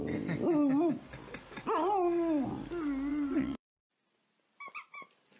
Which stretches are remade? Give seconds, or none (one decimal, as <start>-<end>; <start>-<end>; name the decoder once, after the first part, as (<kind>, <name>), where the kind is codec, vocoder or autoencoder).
3.1-3.7 (vocoder, WaveNeXt)